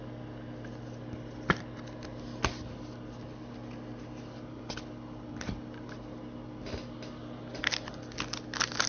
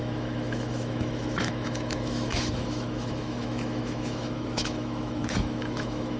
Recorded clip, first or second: first